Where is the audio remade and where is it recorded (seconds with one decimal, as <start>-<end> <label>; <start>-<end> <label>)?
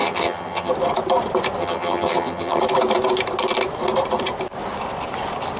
0.0-0.7 remade; 0.7-1.6 recorded; 1.6-2.6 remade; 2.6-5.6 recorded